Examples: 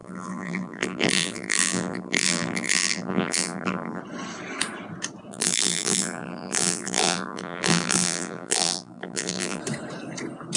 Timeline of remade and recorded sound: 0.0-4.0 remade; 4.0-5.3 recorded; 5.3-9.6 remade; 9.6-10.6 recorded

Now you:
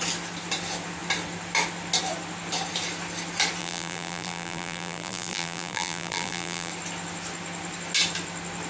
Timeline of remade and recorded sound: 0.0-3.6 recorded; 3.6-6.7 remade; 6.7-8.7 recorded